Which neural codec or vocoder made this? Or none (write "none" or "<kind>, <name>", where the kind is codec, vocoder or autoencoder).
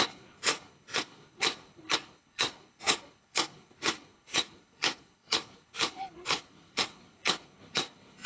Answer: codec, HILCodec